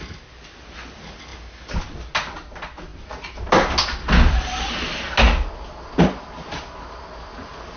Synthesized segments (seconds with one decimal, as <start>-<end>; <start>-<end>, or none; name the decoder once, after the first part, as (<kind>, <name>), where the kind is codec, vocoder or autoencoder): none